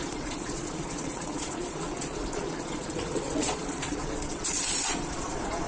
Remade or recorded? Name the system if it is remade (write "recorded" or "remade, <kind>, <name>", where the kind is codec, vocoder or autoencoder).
remade, vocoder, Vocos